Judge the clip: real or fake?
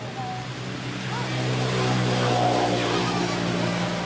real